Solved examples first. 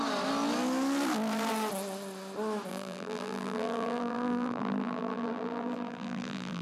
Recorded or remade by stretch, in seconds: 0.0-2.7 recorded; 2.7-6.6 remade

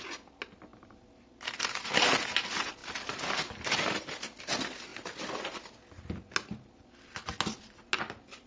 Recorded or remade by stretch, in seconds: 0.0-2.8 recorded; 2.8-4.4 remade; 4.4-8.5 recorded

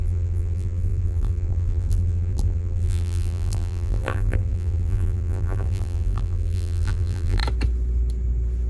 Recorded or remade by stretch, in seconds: 0.0-7.4 remade; 7.4-8.7 recorded

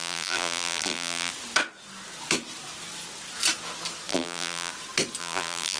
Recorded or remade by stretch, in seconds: 0.0-1.3 remade; 1.3-4.1 recorded; 4.1-4.7 remade; 4.7-5.2 recorded; 5.2-5.8 remade

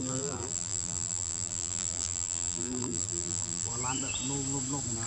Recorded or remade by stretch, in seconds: 0.0-3.7 remade; 3.7-5.1 recorded

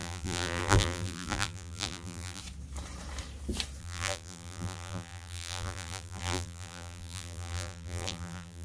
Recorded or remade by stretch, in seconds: 0.0-2.4 remade; 2.4-3.8 recorded; 3.8-8.6 remade

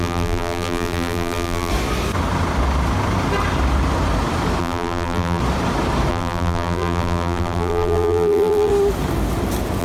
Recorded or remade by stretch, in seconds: 0.0-1.7 remade; 1.7-4.6 recorded; 4.6-5.4 remade; 5.4-6.1 recorded; 6.1-8.7 remade; 8.7-9.8 recorded

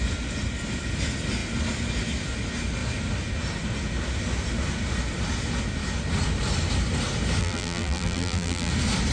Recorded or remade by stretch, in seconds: 0.0-7.4 recorded; 7.4-8.7 remade; 8.7-9.1 recorded